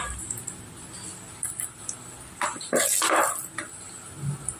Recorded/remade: recorded